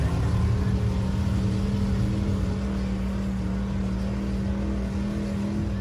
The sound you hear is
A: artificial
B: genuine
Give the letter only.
B